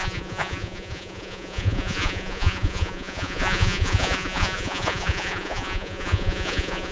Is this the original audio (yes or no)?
no